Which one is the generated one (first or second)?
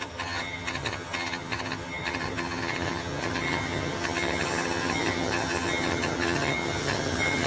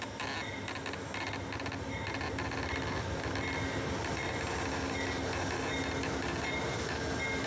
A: first